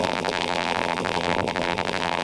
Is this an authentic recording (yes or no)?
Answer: no